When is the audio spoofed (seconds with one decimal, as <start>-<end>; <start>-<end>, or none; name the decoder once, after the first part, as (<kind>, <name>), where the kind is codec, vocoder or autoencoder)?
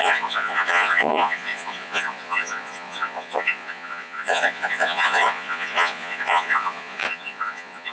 0.0-7.9 (vocoder, Vocos)